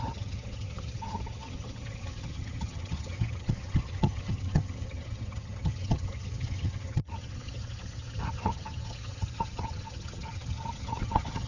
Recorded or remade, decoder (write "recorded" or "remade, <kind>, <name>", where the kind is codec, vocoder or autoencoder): remade, vocoder, HiFi-GAN